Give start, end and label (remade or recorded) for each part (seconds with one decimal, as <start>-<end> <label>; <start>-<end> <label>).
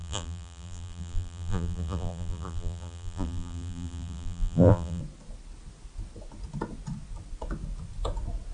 0.0-5.0 remade; 5.0-8.5 recorded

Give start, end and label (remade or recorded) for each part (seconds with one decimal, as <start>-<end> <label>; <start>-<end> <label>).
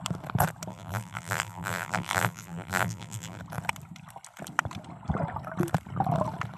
0.0-0.7 recorded; 0.7-3.4 remade; 3.4-6.6 recorded